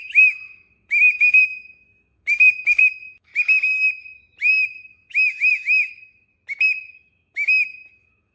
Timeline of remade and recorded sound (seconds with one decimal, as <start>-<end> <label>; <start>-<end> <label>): 0.0-3.3 remade; 3.3-4.5 recorded; 4.5-6.3 remade; 6.3-7.0 recorded; 7.0-8.3 remade